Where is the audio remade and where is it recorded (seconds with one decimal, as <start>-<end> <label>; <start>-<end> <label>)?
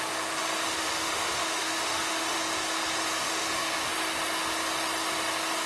0.0-0.6 recorded; 0.6-2.4 remade; 2.4-3.2 recorded; 3.2-3.9 remade; 3.9-5.7 recorded